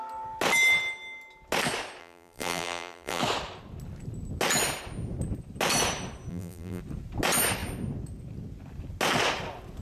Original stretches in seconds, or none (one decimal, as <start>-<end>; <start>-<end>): 0.0-2.0; 3.2-6.3; 6.8-9.8

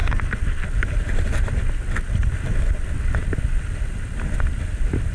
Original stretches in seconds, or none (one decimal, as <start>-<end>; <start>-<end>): 0.0-2.2; 2.8-3.2; 4.5-5.1

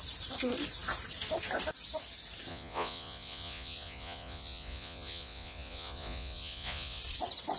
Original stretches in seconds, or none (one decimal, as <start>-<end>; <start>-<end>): 0.0-2.5; 7.0-7.6

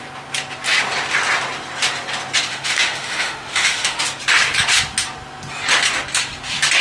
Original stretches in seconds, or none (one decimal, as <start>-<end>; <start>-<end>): 0.0-2.5; 4.0-6.8

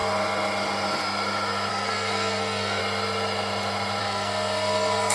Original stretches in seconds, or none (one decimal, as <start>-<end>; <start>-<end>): 0.0-1.7; 2.8-4.0

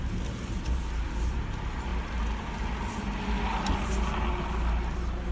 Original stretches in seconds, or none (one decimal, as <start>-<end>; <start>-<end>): 0.0-5.3

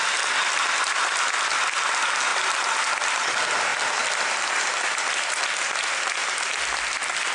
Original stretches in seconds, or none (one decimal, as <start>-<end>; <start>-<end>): 0.0-2.3; 3.3-3.7; 5.4-6.2

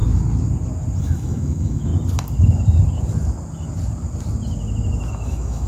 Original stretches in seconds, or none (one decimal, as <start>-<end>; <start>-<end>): 0.0-1.0; 1.9-5.1